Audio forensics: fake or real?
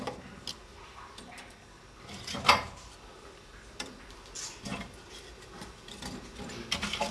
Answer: real